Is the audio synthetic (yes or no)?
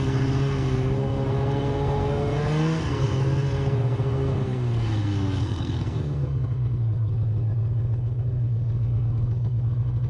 yes